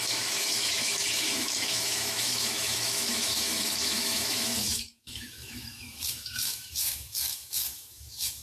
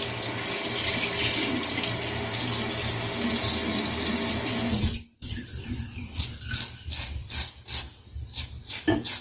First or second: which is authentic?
second